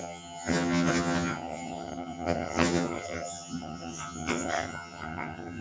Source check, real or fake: fake